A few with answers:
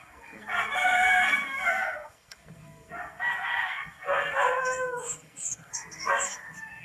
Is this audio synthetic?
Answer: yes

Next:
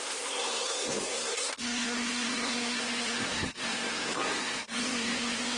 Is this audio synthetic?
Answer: yes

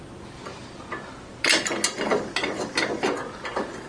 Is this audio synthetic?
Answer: no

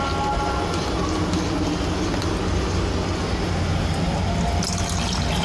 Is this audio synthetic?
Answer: no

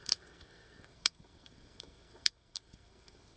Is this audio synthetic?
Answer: yes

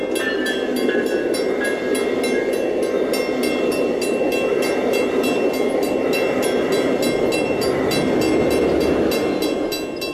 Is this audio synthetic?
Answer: no